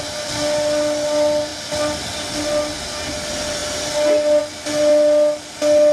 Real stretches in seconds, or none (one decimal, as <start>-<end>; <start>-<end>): 0.0-5.9